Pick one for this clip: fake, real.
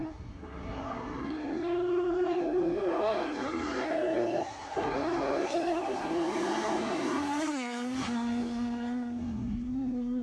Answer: fake